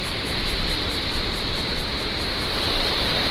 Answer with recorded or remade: remade